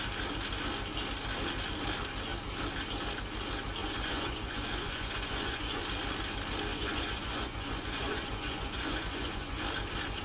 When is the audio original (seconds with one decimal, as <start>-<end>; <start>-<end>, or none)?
0.0-3.8; 5.8-6.7; 9.6-10.2